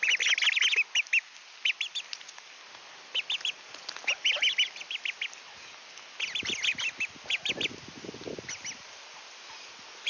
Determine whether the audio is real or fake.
real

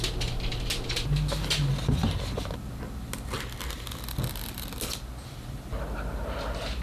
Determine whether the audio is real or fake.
real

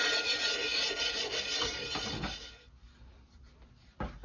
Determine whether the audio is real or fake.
real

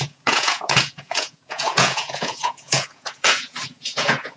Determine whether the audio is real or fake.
fake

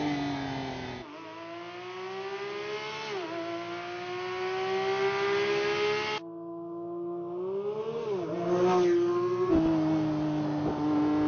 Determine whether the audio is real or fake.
real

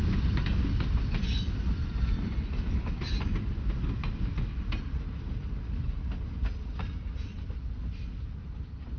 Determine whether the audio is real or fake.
real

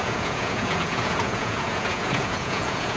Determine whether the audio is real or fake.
fake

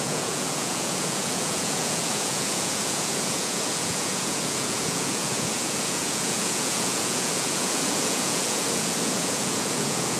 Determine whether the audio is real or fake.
fake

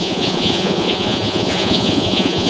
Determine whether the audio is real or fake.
fake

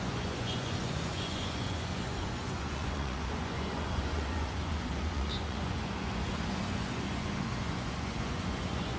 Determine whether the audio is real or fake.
fake